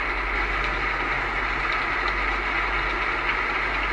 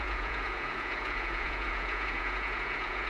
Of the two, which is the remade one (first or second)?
second